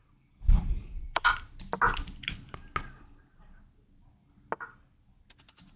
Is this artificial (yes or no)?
no